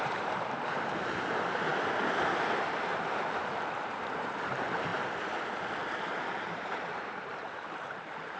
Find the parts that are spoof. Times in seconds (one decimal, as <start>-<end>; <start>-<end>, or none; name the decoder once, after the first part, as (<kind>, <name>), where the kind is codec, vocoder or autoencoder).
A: 0.0-1.7 (vocoder, BigVGAN v2); 2.3-4.9; 5.8-8.4